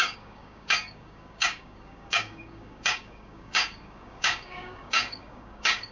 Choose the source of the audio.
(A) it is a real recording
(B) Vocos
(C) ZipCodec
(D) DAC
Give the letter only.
D